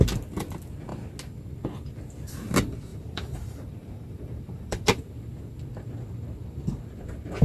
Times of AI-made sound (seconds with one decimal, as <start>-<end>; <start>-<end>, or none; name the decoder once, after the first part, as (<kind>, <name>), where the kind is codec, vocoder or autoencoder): 2.9-4.8 (vocoder, BigVGAN v2)